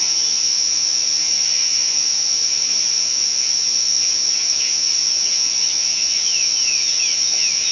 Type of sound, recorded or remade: remade